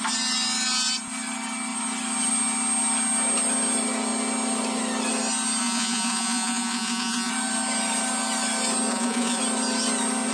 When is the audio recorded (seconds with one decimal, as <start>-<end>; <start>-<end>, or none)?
0.0-5.6; 7.3-8.9; 9.4-10.3

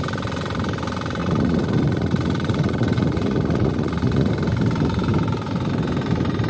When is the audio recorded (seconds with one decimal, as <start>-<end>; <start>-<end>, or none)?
0.0-1.2; 4.3-6.5

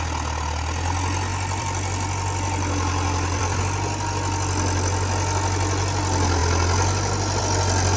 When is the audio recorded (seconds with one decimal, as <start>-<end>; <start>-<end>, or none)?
0.0-1.3; 3.6-8.0

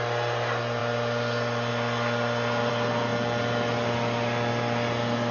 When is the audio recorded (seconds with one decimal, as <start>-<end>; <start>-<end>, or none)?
0.0-5.3

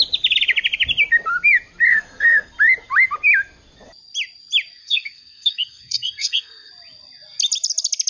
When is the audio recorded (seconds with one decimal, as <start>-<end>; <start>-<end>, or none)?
0.0-1.9; 2.5-4.8; 6.7-8.1

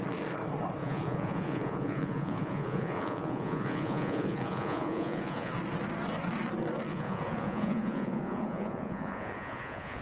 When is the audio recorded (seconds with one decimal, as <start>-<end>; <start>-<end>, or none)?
0.0-0.8; 5.5-6.9

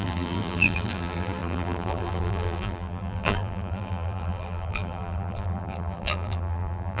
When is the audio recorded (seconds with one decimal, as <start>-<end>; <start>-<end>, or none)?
none

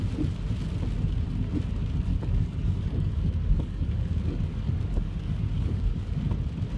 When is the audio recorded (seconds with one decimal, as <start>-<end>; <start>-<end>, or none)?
0.0-2.1; 6.2-6.8